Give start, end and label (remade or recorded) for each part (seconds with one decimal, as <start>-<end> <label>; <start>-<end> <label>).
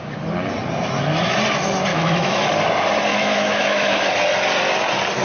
0.0-1.9 recorded; 1.9-2.5 remade; 2.5-3.1 recorded; 3.1-4.1 remade; 4.1-5.2 recorded